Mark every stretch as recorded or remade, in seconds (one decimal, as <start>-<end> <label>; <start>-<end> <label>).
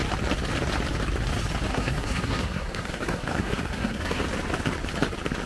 0.0-1.7 recorded; 1.7-4.2 remade; 4.2-5.5 recorded